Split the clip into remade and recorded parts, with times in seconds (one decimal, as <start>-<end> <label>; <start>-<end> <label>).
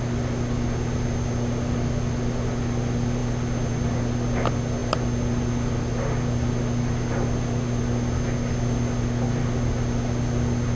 0.0-10.8 recorded